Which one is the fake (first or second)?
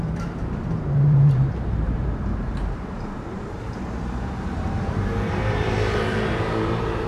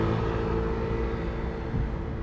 first